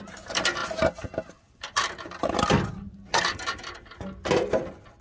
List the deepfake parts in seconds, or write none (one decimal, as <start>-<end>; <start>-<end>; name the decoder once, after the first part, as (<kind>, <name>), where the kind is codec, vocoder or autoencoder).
none